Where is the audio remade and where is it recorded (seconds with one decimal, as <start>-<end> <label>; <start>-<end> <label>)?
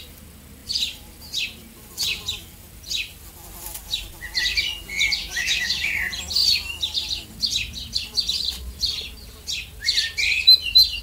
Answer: 0.0-5.2 recorded; 5.2-5.9 remade; 5.9-11.0 recorded